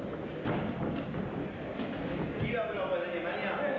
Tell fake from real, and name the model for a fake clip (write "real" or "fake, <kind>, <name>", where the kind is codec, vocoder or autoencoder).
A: real